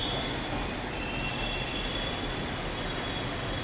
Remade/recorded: recorded